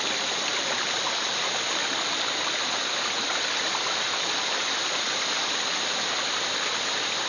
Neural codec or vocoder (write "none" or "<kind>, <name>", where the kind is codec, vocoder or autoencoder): none